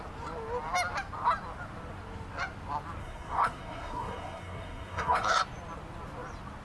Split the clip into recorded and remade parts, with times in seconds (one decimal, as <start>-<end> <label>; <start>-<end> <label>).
0.0-3.0 recorded; 3.0-5.4 remade; 5.4-6.6 recorded